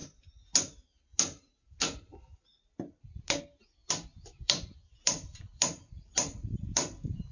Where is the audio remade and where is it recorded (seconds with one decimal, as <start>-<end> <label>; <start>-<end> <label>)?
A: 0.0-3.2 recorded; 3.2-7.3 remade